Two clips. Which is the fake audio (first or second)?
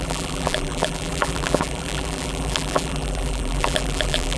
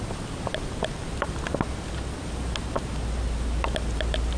first